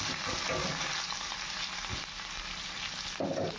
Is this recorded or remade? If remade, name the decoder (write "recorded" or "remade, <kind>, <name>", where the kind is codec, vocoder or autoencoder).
recorded